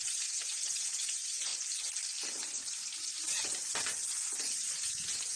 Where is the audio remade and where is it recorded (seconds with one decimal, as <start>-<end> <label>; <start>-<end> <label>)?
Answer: 0.0-1.5 remade; 1.5-4.7 recorded; 4.7-5.4 remade

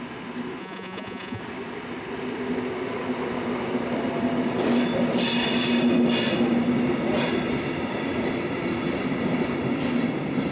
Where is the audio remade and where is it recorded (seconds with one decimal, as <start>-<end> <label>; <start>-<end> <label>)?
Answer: 0.0-0.6 recorded; 0.6-1.4 remade; 1.4-10.5 recorded